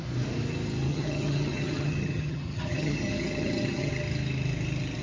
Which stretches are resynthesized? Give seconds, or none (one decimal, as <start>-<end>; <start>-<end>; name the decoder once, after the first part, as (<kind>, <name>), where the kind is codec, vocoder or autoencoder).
0.9-3.9 (vocoder, HiFi-GAN)